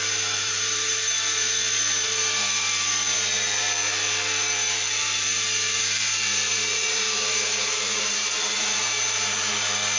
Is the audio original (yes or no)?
no